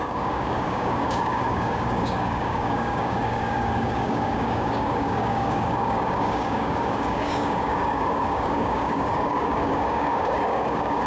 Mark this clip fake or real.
fake